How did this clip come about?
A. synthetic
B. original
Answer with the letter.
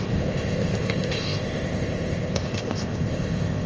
A